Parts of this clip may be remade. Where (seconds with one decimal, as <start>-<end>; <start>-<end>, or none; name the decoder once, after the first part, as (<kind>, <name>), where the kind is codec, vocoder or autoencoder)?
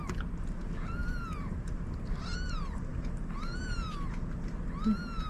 none